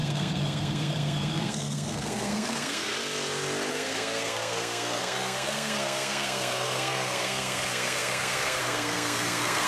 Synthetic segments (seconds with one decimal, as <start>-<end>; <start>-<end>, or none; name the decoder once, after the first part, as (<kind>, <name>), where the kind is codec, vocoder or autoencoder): 0.0-2.9 (codec, SNAC); 3.7-9.7